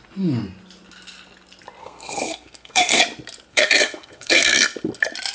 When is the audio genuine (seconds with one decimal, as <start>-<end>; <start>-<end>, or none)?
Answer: 0.0-1.8; 3.0-3.5; 4.6-5.3